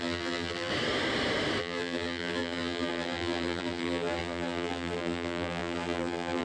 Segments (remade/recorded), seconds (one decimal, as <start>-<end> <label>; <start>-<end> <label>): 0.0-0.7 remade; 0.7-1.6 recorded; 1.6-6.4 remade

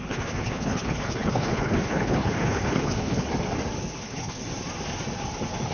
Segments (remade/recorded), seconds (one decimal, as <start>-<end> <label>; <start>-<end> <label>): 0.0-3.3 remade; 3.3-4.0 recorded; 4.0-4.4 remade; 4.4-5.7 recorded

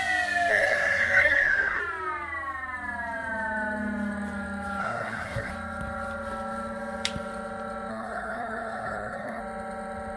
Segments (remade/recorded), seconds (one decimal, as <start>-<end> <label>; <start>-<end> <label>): 0.0-0.5 recorded; 0.5-1.8 remade; 1.8-4.8 recorded; 4.8-5.5 remade; 5.5-7.9 recorded; 7.9-9.4 remade; 9.4-10.2 recorded